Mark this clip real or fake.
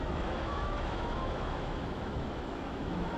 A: fake